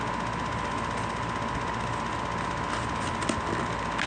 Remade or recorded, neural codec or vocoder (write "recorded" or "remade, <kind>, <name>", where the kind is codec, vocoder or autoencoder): recorded